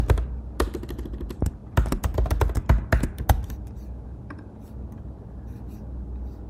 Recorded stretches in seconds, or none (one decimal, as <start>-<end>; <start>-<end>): 0.0-6.5